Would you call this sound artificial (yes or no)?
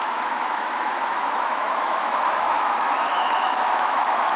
yes